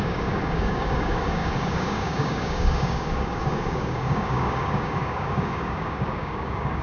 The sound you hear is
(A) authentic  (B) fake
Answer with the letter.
B